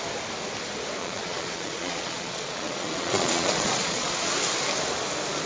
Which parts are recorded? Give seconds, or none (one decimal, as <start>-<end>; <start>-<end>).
0.0-1.0; 4.3-5.5